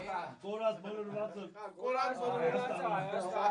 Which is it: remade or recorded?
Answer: recorded